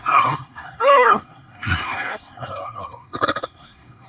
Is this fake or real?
fake